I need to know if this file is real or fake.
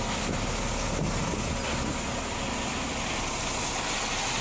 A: real